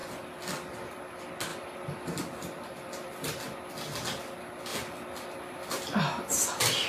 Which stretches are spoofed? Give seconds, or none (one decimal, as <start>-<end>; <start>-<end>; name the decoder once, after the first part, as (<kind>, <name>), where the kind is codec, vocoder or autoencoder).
none